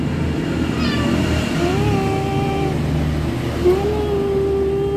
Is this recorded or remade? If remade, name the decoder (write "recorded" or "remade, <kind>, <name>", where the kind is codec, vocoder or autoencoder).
recorded